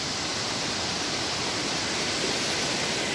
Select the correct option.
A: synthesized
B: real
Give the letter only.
B